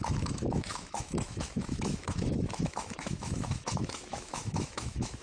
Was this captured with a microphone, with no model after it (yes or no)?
no